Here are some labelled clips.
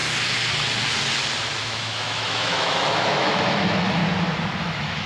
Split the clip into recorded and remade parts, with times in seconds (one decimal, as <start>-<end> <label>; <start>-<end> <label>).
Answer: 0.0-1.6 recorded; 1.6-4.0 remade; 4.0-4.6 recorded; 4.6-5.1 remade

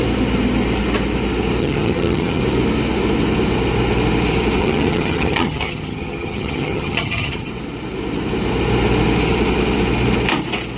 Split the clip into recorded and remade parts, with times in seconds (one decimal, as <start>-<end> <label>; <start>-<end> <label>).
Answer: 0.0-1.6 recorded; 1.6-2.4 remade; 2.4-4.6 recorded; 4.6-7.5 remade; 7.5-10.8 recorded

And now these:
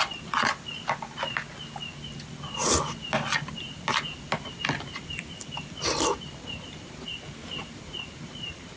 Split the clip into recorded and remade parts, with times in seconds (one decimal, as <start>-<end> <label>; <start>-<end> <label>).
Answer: 0.0-8.8 recorded

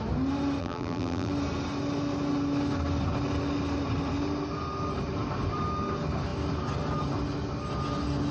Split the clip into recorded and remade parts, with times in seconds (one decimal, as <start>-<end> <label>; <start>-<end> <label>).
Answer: 0.0-0.6 recorded; 0.6-1.3 remade; 1.3-8.3 recorded

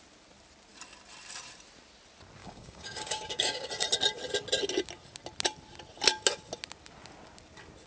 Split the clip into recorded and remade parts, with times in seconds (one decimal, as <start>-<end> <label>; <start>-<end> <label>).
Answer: 0.0-2.4 recorded; 2.4-3.7 remade; 3.7-7.9 recorded